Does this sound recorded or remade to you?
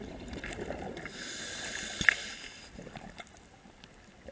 recorded